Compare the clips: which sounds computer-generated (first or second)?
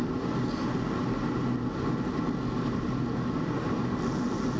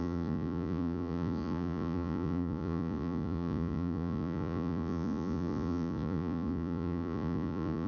second